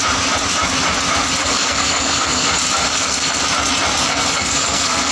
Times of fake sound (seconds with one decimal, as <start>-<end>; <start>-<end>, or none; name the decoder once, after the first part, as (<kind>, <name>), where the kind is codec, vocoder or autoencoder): 1.4-2.5 (codec, SNAC); 2.9-3.4; 4.0-5.1